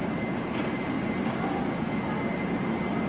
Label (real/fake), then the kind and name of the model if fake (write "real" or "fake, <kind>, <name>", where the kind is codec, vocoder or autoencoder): real